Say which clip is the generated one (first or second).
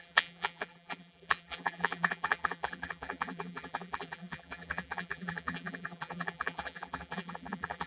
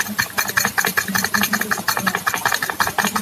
first